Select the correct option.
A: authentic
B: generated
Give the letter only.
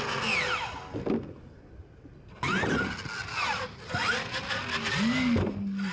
A